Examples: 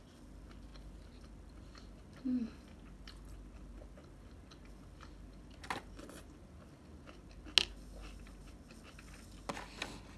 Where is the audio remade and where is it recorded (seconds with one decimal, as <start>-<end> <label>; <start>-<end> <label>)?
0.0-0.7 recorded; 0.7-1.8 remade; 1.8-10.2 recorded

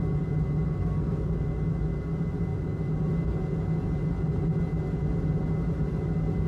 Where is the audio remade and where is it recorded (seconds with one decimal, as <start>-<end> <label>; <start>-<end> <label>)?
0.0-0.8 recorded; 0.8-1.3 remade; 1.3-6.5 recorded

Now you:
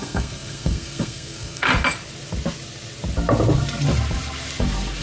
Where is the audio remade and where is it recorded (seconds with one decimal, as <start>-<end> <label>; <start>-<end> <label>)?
0.0-1.7 remade; 1.7-5.0 recorded

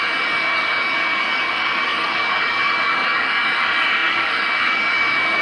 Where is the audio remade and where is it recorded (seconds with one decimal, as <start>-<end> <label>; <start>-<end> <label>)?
0.0-5.4 remade

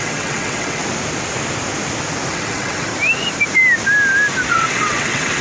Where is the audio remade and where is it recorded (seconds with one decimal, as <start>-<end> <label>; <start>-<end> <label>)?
0.0-0.8 remade; 0.8-2.3 recorded; 2.3-2.9 remade; 2.9-4.5 recorded; 4.5-5.4 remade

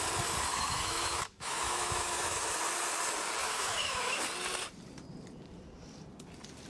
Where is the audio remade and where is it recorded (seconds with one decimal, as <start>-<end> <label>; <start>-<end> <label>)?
0.0-0.5 recorded; 0.5-2.6 remade; 2.6-3.4 recorded; 3.4-4.2 remade; 4.2-6.7 recorded

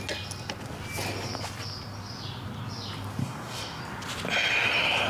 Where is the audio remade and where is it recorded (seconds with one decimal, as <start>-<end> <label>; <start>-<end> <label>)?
0.0-3.2 recorded; 3.2-3.8 remade; 3.8-5.1 recorded